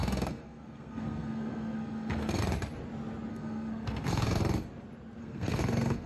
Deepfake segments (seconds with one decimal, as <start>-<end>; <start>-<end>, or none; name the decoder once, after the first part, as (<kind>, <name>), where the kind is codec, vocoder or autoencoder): 0.0-2.4 (codec, SNAC); 3.3-4.4; 5.2-6.1